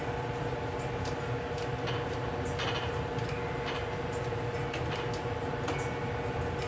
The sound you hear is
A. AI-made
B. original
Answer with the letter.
B